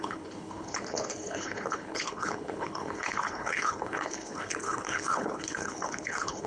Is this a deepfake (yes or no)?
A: yes